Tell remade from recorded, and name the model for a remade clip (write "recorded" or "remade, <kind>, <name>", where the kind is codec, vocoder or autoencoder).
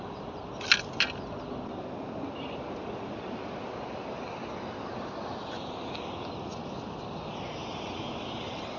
recorded